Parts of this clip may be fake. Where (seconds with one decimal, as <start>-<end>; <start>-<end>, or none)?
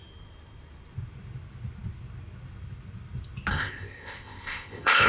3.5-5.1